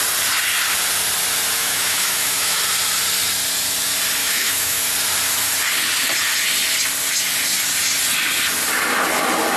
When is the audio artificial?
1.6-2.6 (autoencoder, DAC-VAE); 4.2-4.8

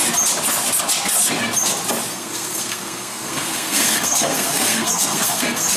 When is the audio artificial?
2.1-5.8 (codec, SNAC)

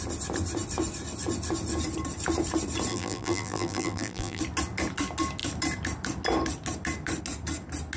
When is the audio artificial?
2.9-4.4 (vocoder, BigVGAN v2)

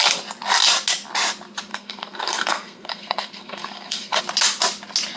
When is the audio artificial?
1.7-4.2 (codec, SNAC)

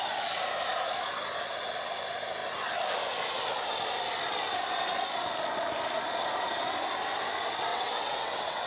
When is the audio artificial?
7.7-8.7 (vocoder, WaveNeXt)

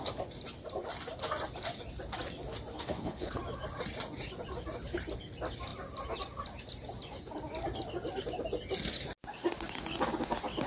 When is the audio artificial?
2.7-3.4 (codec, HILCodec)